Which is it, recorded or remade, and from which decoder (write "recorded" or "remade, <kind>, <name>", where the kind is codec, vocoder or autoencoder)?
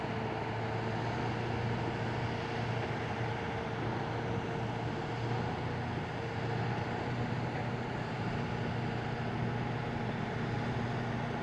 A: recorded